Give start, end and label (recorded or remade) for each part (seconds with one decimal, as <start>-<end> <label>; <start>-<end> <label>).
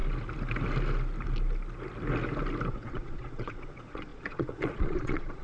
0.0-2.7 recorded; 2.7-5.4 remade